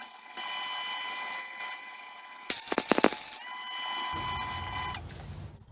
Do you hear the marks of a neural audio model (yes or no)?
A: no